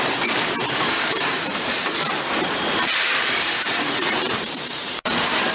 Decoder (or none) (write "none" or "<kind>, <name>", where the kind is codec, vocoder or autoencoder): vocoder, BigVGAN v2